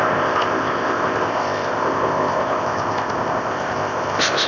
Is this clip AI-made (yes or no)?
yes